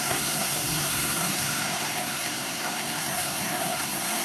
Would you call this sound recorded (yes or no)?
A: no